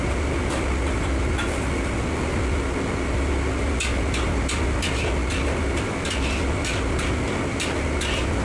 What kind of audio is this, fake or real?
real